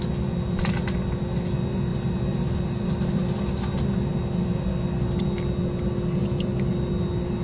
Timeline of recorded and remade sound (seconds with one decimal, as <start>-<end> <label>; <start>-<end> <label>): 0.0-1.9 recorded; 1.9-3.4 remade; 3.4-7.4 recorded